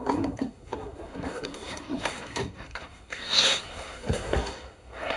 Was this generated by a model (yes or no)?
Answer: yes